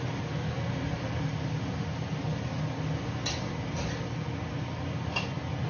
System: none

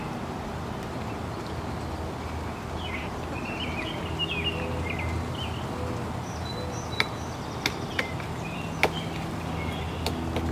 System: none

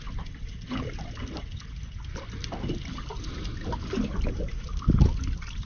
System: none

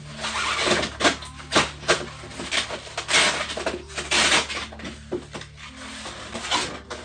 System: none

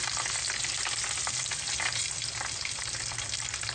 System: none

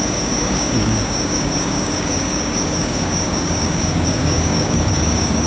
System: codec, DAC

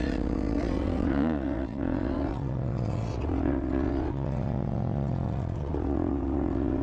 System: vocoder, WaveNeXt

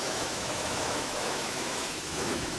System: autoencoder, DAC-VAE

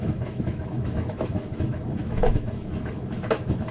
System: autoencoder, DAC-VAE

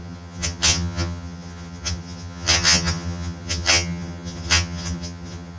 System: vocoder, HiFi-GAN